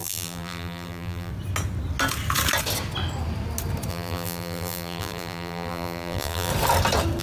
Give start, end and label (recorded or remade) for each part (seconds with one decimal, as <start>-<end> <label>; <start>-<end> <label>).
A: 0.0-1.3 remade; 1.3-3.9 recorded; 3.9-6.5 remade; 6.5-7.2 recorded